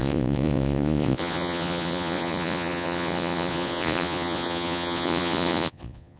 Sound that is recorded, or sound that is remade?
remade